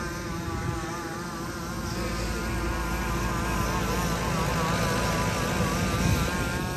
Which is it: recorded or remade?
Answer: recorded